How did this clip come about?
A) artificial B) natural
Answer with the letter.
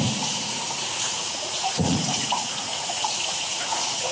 A